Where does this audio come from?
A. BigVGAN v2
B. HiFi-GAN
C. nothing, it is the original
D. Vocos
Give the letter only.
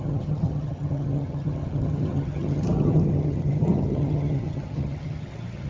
B